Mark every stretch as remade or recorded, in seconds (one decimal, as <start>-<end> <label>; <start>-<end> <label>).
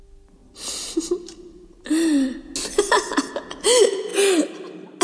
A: 0.0-4.1 recorded; 4.1-5.0 remade